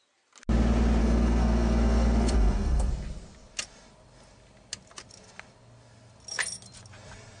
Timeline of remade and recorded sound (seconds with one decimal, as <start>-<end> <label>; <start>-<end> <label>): 0.0-1.0 recorded; 1.0-2.9 remade; 2.9-7.4 recorded